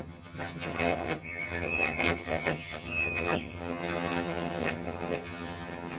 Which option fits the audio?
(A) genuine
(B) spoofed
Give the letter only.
B